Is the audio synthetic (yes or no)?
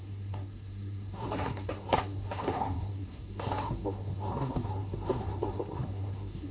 yes